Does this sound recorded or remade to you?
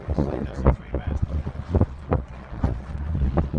remade